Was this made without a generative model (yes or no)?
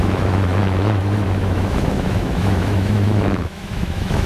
no